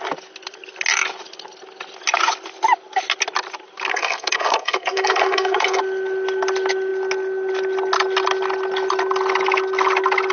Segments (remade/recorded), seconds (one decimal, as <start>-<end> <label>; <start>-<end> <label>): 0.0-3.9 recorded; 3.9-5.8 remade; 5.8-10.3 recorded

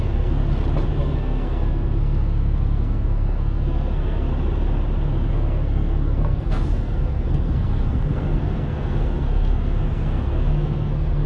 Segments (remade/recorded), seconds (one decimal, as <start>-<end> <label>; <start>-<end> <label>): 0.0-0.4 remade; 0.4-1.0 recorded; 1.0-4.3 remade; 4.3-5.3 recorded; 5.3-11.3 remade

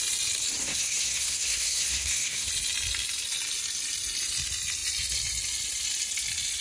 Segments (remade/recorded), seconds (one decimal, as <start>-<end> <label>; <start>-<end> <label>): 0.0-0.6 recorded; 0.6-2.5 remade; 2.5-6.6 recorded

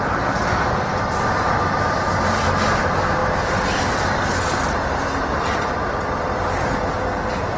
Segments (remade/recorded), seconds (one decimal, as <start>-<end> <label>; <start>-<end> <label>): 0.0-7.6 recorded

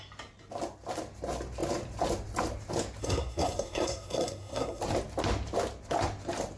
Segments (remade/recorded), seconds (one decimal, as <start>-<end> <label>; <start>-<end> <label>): 0.0-3.0 recorded; 3.0-4.8 remade; 4.8-6.6 recorded

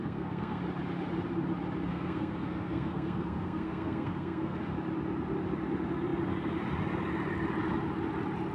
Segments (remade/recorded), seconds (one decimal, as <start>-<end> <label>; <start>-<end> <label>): 0.0-0.6 remade; 0.6-1.9 recorded; 1.9-4.6 remade; 4.6-8.5 recorded